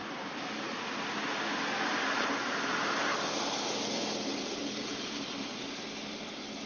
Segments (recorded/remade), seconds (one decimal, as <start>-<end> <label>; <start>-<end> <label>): 0.0-0.8 remade; 0.8-3.1 recorded; 3.1-5.4 remade; 5.4-6.7 recorded